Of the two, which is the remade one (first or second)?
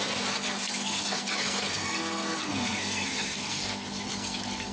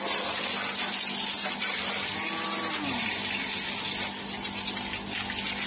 first